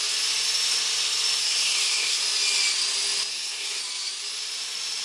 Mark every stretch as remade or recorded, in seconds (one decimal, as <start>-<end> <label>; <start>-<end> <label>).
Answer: 0.0-1.4 recorded; 1.4-2.2 remade; 2.2-3.3 recorded; 3.3-3.8 remade; 3.8-5.0 recorded